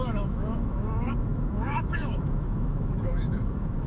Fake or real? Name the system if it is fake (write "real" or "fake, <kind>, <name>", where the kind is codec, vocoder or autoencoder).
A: fake, autoencoder, DAC-VAE